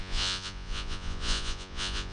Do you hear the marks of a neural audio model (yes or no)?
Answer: yes